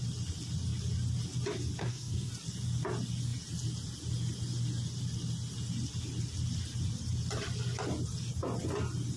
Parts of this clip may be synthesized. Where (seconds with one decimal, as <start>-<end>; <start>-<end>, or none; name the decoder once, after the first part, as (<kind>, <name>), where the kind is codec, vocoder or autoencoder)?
1.8-2.3 (codec, SNAC)